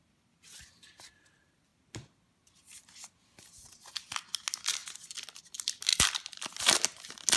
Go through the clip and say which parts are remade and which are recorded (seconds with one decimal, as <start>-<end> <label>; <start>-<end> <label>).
0.0-7.4 recorded